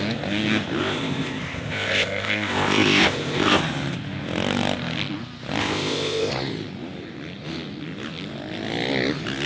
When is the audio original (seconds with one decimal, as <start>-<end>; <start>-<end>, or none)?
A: 0.0-0.8; 3.6-5.6; 6.3-9.5

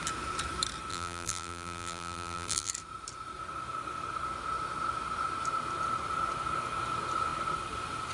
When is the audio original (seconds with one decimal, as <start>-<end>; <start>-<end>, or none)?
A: 0.0-0.9; 2.7-8.1

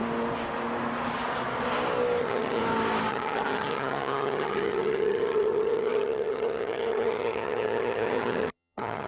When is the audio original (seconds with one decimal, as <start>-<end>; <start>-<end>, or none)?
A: 0.0-2.2; 2.6-3.1

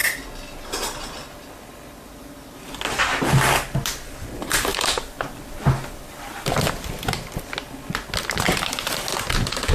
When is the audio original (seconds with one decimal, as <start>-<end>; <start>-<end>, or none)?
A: 0.0-4.7; 6.5-9.7